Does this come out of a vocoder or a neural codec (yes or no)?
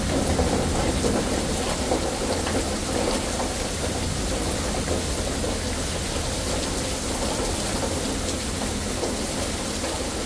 no